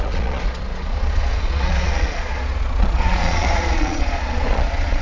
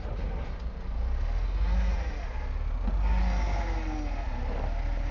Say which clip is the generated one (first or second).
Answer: first